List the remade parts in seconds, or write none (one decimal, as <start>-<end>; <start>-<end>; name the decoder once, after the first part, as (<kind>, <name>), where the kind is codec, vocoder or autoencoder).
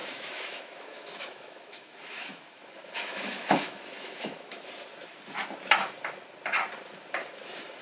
0.0-4.7 (autoencoder, DAC-VAE)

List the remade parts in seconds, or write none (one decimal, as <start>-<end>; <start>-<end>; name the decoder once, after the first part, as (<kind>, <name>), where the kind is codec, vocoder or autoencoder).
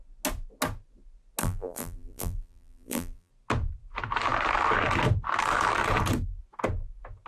1.4-3.3 (vocoder, BigVGAN v2)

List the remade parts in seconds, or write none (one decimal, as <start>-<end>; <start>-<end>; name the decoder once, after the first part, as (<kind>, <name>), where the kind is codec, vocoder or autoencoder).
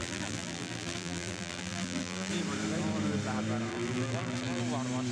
0.0-2.3 (vocoder, BigVGAN v2); 3.7-4.6